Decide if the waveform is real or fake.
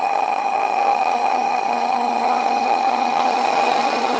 fake